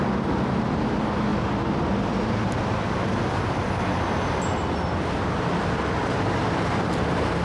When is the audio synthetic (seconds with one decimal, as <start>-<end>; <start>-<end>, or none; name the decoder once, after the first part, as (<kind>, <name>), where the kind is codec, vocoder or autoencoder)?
none

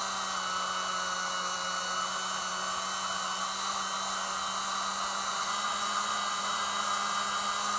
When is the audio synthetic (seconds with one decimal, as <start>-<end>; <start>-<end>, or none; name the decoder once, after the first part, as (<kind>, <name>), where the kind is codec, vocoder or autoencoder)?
5.3-6.6 (vocoder, Vocos)

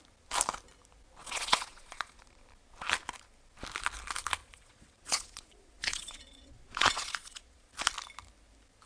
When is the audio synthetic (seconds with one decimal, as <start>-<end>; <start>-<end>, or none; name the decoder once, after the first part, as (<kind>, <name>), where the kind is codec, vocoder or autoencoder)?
1.2-2.4 (vocoder, Vocos); 4.4-7.7

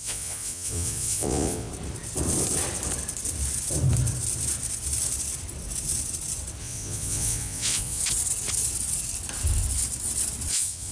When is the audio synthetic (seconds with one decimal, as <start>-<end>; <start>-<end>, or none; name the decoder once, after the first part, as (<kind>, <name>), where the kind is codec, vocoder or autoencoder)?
0.0-1.7 (vocoder, Vocos); 6.6-8.0; 10.5-10.9